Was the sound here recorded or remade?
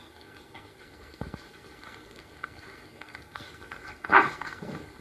remade